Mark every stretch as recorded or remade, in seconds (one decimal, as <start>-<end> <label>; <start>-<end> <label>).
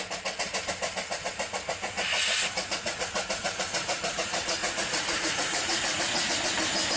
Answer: 0.0-2.1 recorded; 2.1-6.3 remade; 6.3-7.0 recorded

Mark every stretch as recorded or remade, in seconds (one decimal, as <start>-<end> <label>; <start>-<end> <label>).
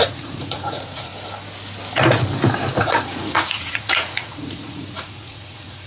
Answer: 0.0-1.1 remade; 1.1-2.8 recorded; 2.8-5.9 remade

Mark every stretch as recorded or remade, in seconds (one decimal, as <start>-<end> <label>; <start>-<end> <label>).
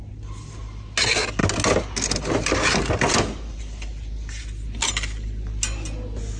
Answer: 0.0-6.4 recorded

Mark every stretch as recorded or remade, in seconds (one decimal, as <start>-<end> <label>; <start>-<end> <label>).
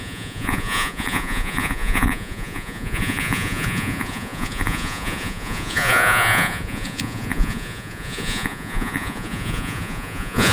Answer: 0.0-10.5 remade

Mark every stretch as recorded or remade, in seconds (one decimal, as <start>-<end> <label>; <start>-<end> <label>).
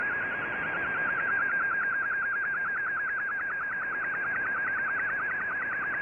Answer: 0.0-1.0 recorded; 1.0-2.1 remade; 2.1-6.0 recorded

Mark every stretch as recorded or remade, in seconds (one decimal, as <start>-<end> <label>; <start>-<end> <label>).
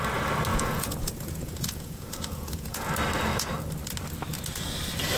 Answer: 0.0-0.5 recorded; 0.5-2.9 remade; 2.9-5.2 recorded